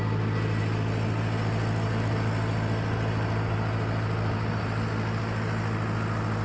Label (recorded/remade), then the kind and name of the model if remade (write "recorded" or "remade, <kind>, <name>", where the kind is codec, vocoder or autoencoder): recorded